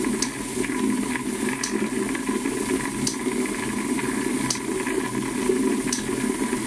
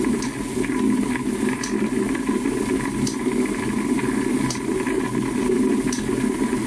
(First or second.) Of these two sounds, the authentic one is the first